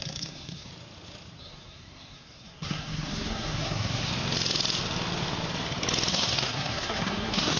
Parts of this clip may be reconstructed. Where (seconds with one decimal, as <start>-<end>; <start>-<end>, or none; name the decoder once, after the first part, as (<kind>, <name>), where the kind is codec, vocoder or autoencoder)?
0.0-0.7 (codec, SNAC); 1.4-4.1; 6.1-7.6